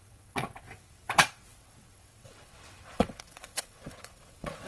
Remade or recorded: remade